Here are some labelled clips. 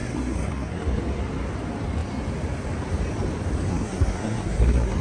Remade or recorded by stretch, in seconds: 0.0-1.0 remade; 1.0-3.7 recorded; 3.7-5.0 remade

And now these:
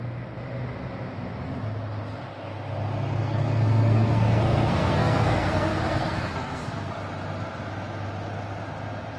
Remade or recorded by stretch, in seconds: 0.0-3.2 recorded; 3.2-6.9 remade; 6.9-9.2 recorded

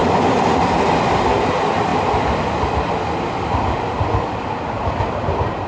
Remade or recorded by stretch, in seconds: 0.0-0.7 remade; 0.7-1.9 recorded; 1.9-5.2 remade; 5.2-5.7 recorded

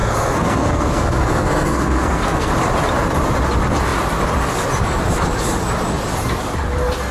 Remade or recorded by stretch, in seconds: 0.0-2.5 remade; 2.5-7.1 recorded